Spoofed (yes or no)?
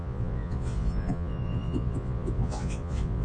yes